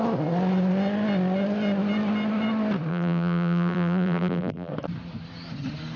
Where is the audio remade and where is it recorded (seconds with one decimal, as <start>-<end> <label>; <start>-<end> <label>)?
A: 0.0-2.9 recorded; 2.9-4.7 remade; 4.7-6.0 recorded